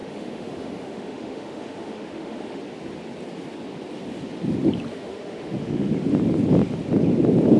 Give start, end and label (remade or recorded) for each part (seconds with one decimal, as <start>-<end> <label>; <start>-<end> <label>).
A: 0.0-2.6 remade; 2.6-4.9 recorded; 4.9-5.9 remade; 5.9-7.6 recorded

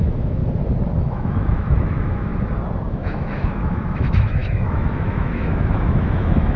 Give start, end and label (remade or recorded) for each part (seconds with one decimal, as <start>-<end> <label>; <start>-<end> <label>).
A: 0.0-0.4 remade; 0.4-1.0 recorded; 1.0-2.3 remade; 2.3-2.9 recorded; 2.9-6.6 remade

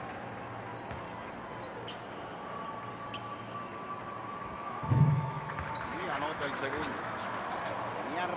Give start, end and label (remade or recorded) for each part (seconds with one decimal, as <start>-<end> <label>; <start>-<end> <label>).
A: 0.0-4.6 recorded; 4.6-5.5 remade; 5.5-5.9 recorded; 5.9-7.5 remade; 7.5-8.4 recorded

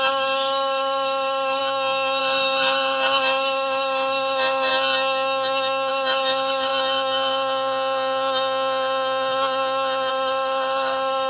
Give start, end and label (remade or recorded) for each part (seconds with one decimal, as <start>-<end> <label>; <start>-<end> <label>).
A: 0.0-1.6 remade; 1.6-2.2 recorded; 2.2-4.7 remade; 4.7-5.9 recorded; 5.9-6.7 remade; 6.7-10.1 recorded; 10.1-11.3 remade

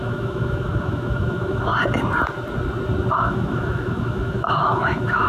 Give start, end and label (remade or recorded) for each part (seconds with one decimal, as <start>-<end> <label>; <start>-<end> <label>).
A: 0.0-1.7 remade; 1.7-3.1 recorded; 3.1-5.3 remade